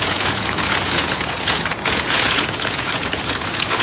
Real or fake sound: fake